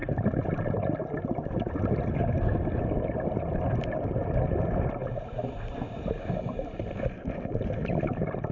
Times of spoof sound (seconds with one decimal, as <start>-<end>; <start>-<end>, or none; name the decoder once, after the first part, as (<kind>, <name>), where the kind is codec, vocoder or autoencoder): none